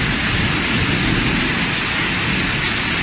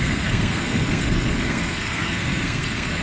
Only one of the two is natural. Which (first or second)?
first